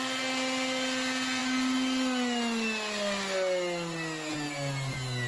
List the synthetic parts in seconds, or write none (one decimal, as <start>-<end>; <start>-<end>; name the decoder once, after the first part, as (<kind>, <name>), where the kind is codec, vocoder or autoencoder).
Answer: none